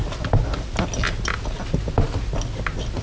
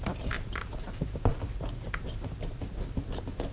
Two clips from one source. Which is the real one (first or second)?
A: first